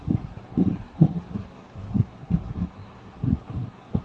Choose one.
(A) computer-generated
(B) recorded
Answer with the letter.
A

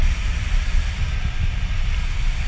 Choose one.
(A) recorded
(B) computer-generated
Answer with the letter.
A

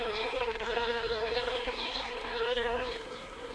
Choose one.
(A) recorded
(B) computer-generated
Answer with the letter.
B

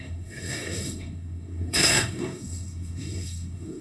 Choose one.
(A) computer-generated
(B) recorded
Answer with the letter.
A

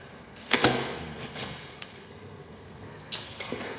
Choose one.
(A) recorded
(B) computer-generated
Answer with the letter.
B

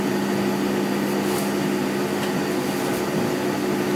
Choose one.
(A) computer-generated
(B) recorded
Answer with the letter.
B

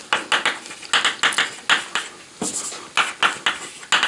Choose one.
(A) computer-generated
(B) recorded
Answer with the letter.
B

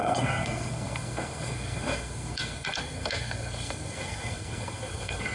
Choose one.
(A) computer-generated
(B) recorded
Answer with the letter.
A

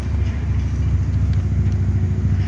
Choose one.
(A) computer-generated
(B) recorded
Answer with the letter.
B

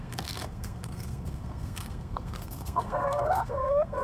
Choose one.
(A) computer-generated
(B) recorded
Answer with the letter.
A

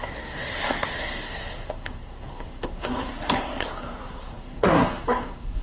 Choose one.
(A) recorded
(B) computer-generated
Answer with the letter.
B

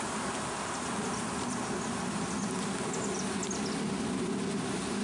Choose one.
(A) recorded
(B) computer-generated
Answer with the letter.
A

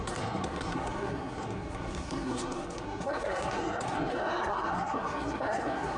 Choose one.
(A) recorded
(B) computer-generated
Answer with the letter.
B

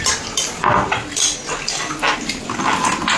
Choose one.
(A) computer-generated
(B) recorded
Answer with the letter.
B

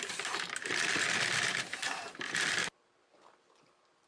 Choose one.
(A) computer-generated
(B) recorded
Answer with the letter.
B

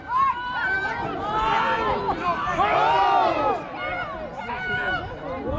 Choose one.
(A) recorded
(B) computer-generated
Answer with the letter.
A